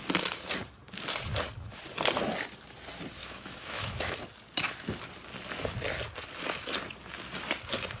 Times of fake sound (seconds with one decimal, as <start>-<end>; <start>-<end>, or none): 3.2-4.2